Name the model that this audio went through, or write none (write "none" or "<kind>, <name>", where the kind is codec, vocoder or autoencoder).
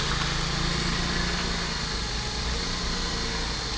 none